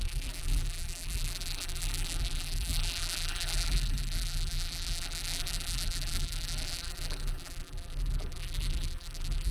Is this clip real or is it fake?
fake